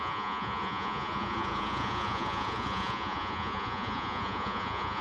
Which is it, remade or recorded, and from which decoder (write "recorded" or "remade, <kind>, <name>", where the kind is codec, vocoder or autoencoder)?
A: remade, vocoder, Vocos